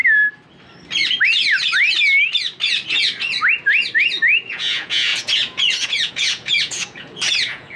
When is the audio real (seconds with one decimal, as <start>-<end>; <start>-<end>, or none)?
0.0-4.5